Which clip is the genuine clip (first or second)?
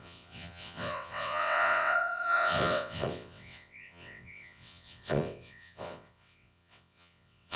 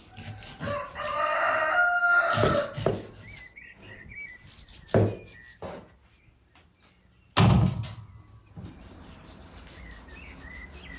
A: second